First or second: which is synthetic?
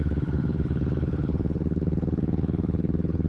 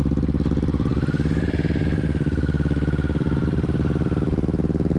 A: first